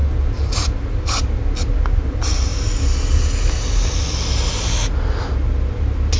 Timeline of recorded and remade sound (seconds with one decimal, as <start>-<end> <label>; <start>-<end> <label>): 0.0-6.2 recorded